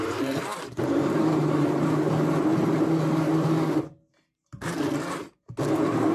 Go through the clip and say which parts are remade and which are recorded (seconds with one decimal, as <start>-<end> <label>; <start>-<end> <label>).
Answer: 0.0-2.5 remade; 2.5-6.1 recorded